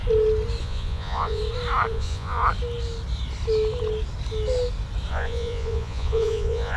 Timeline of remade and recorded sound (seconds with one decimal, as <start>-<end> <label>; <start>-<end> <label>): 0.0-0.6 recorded; 0.6-1.4 remade; 1.4-1.9 recorded; 1.9-2.4 remade; 2.4-5.1 recorded; 5.1-6.8 remade